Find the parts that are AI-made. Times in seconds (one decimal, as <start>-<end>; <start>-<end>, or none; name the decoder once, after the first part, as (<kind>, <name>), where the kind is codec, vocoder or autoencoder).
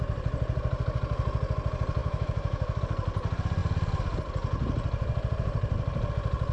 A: 2.0-2.8 (autoencoder, DAC-VAE)